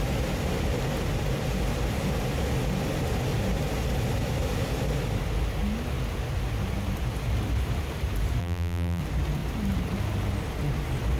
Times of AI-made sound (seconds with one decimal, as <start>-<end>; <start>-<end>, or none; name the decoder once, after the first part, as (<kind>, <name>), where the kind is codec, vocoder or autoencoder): 8.4-9.0 (vocoder, BigVGAN v2)